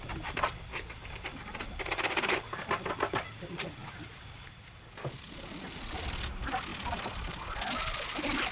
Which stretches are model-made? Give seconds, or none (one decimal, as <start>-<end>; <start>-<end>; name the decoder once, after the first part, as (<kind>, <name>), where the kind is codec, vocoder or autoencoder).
6.7-7.3 (vocoder, BigVGAN v2)